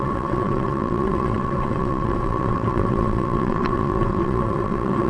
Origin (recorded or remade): remade